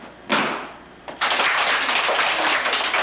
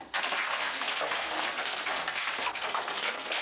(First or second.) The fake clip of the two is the second